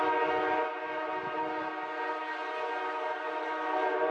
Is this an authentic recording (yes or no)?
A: yes